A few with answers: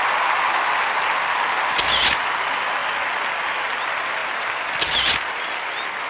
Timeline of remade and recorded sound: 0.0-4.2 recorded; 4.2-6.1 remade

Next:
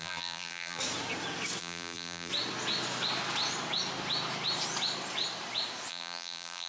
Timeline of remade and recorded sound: 0.0-0.8 remade; 0.8-1.6 recorded; 1.6-2.3 remade; 2.3-5.9 recorded; 5.9-6.7 remade

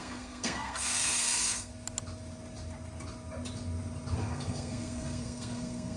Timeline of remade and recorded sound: 0.0-1.7 remade; 1.7-4.2 recorded; 4.2-6.0 remade

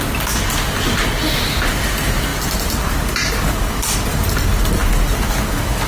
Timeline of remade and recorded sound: 0.0-2.3 recorded; 2.3-3.1 remade; 3.1-4.8 recorded; 4.8-5.3 remade; 5.3-5.9 recorded